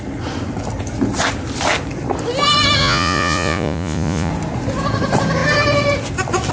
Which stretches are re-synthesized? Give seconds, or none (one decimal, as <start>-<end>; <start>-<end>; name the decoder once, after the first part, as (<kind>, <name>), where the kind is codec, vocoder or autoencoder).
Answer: 2.8-4.3 (vocoder, Vocos)